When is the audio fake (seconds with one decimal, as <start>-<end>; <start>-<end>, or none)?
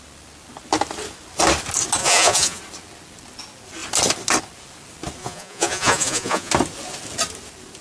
2.0-2.6; 5.2-6.5